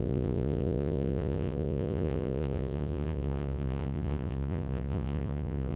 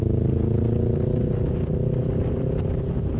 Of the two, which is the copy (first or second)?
first